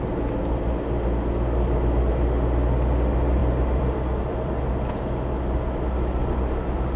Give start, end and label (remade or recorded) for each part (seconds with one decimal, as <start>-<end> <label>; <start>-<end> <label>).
0.0-3.4 recorded; 3.4-4.6 remade; 4.6-7.0 recorded